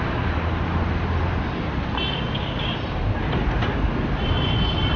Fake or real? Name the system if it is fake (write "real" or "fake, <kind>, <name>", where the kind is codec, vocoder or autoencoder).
real